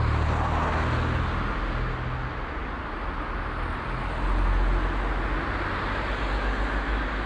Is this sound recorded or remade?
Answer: recorded